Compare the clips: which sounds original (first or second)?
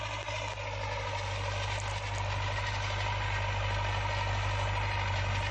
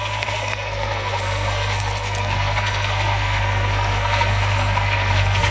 first